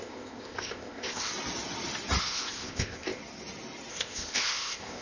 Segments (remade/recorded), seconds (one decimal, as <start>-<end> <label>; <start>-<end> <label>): 0.0-1.3 remade; 1.3-2.2 recorded; 2.2-3.2 remade; 3.2-3.9 recorded; 3.9-5.0 remade